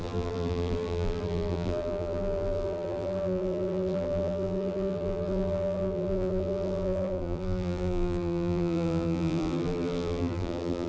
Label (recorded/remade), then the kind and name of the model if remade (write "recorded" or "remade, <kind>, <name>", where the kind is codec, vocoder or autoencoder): remade, vocoder, BigVGAN v2